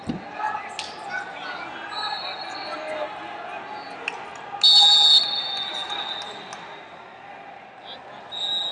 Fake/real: real